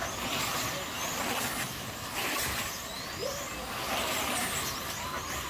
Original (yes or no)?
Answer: yes